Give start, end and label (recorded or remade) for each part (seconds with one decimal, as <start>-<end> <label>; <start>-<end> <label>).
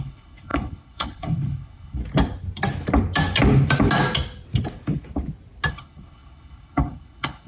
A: 0.0-2.0 remade; 2.0-5.7 recorded; 5.7-7.5 remade